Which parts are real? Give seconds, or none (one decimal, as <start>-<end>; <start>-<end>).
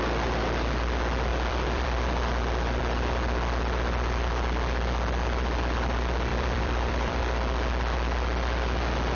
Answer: 0.0-1.3; 2.8-6.3; 7.2-9.2